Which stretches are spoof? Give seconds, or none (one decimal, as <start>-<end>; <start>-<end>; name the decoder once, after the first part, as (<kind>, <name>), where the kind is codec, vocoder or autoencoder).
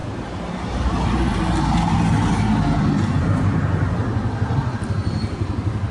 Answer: 0.0-1.4 (vocoder, BigVGAN v2); 3.2-3.7